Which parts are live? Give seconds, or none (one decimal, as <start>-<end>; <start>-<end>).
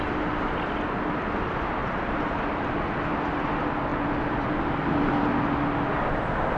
0.0-1.8; 2.7-3.9; 5.0-6.6